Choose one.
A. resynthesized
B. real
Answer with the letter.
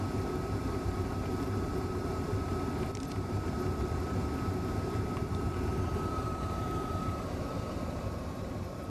A